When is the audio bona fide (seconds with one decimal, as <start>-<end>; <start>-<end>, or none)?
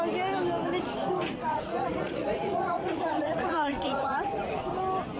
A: 0.0-1.5; 4.6-5.2